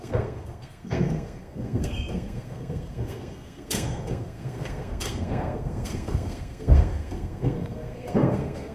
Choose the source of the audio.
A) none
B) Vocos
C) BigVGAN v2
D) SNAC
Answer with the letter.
D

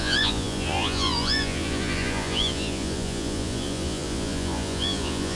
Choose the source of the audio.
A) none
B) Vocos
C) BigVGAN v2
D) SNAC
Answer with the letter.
B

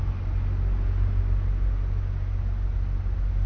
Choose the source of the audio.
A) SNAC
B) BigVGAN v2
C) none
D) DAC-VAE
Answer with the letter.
C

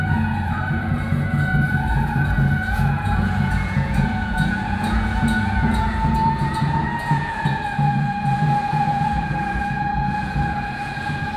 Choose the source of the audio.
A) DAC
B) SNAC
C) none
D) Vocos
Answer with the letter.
D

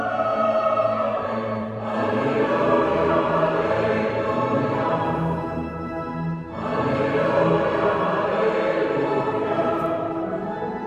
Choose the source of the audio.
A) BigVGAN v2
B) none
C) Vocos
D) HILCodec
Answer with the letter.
A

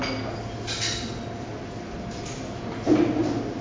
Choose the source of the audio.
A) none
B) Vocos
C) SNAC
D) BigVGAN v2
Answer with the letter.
A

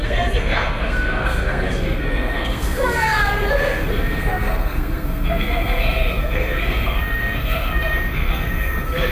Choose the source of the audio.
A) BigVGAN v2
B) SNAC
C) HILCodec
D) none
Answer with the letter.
B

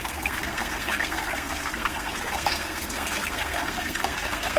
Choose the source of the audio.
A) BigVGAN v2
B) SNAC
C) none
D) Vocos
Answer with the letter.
B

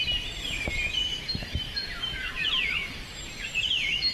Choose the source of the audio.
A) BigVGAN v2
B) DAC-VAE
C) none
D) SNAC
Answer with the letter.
A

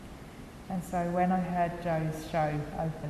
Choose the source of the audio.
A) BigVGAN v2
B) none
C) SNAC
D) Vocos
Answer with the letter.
B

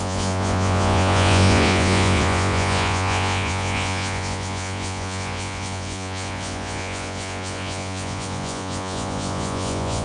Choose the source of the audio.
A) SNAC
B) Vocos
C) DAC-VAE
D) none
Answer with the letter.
B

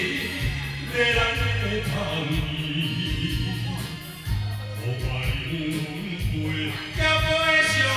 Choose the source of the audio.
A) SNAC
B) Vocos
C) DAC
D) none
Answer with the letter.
D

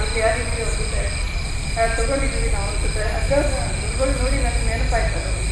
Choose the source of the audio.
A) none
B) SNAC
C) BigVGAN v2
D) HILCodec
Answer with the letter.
A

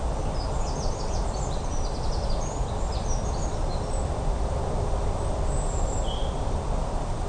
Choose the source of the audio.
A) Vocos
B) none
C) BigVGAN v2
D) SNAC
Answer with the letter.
B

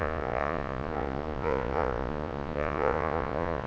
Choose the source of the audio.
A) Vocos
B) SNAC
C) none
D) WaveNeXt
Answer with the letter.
A